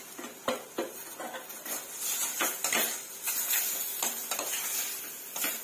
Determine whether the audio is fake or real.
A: real